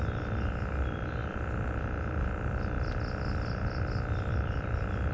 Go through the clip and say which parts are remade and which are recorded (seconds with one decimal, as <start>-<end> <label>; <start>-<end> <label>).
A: 0.0-5.1 recorded